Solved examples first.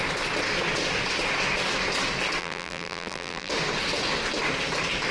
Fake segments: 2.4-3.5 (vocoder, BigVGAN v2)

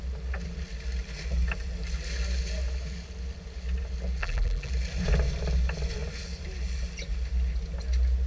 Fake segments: 4.2-4.7 (vocoder, BigVGAN v2)

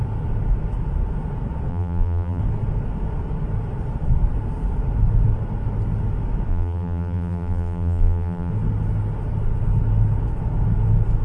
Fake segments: 1.7-2.4 (vocoder, BigVGAN v2); 6.5-8.5

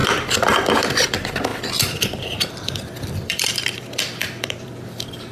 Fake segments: 0.0-5.3 (vocoder, BigVGAN v2)

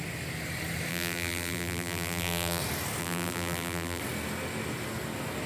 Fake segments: 0.9-2.6 (vocoder, BigVGAN v2); 3.0-4.0

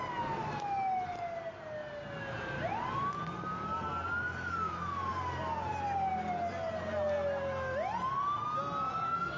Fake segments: none

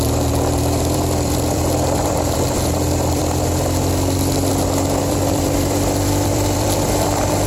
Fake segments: 0.0-7.5 (vocoder, BigVGAN v2)